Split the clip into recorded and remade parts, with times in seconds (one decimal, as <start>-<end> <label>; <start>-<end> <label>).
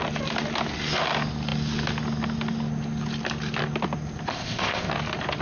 0.0-4.3 recorded; 4.3-4.9 remade; 4.9-5.4 recorded